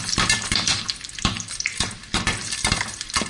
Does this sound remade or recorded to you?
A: remade